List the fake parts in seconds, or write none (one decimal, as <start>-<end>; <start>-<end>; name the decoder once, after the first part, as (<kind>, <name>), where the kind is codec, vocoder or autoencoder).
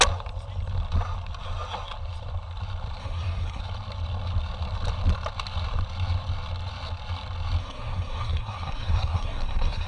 3.0-3.6 (codec, SNAC); 7.6-9.9